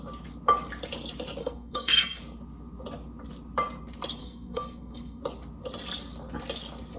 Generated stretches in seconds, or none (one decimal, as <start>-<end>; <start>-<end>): 1.4-2.2; 4.2-5.2